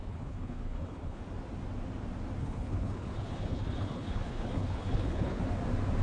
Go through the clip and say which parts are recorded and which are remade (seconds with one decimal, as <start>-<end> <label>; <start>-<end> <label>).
0.0-1.2 remade; 1.2-2.4 recorded; 2.4-5.4 remade; 5.4-6.0 recorded